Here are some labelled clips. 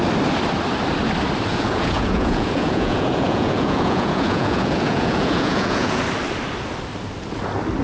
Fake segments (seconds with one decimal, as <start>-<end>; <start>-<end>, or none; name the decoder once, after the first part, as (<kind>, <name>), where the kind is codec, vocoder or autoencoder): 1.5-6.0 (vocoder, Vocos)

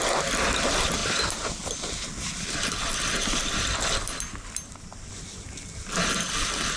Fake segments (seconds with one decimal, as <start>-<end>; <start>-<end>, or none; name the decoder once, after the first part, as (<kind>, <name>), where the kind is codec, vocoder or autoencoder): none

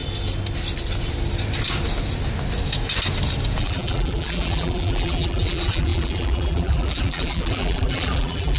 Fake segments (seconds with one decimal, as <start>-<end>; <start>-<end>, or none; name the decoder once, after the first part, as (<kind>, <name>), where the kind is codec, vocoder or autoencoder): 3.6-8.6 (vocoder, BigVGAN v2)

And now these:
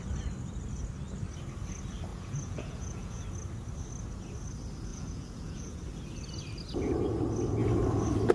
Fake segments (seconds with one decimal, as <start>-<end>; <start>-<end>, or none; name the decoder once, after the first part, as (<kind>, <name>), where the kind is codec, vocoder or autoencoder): 2.1-3.1 (vocoder, Vocos); 4.9-5.8

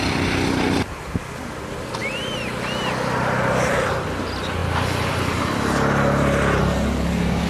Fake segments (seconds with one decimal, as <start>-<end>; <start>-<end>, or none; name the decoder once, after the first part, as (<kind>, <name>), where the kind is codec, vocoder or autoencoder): none

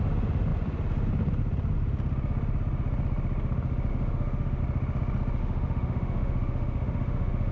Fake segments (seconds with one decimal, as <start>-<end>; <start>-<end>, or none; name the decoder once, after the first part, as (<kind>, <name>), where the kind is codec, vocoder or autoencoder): 3.9-4.6 (autoencoder, DAC-VAE); 5.4-7.5